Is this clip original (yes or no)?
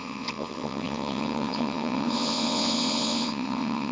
no